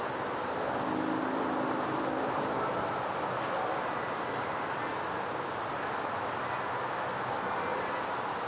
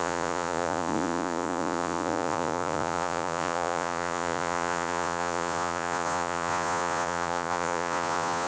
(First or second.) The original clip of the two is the first